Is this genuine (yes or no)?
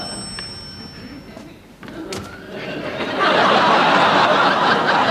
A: yes